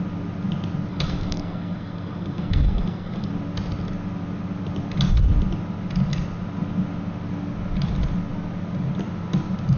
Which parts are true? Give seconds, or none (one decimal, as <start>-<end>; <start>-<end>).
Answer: 0.0-0.9; 3.3-9.8